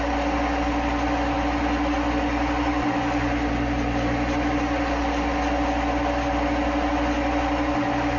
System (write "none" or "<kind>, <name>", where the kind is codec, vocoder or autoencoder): none